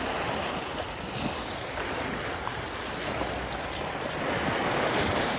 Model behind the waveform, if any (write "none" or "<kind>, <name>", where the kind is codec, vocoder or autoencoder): none